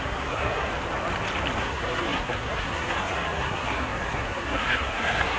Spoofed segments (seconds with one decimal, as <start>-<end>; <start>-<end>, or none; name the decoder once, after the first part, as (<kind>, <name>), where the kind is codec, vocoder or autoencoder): 0.0-0.7 (codec, SNAC); 1.6-5.4